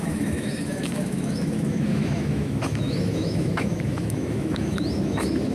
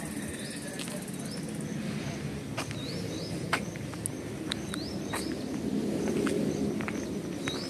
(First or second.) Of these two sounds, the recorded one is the second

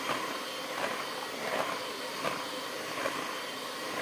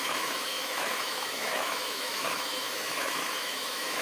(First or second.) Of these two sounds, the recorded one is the first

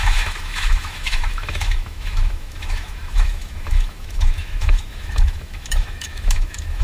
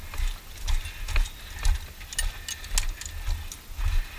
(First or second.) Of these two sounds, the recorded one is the second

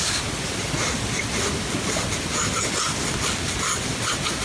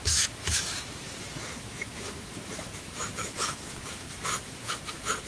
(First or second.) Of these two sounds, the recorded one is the first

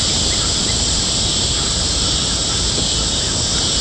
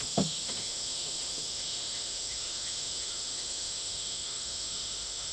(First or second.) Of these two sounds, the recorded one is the first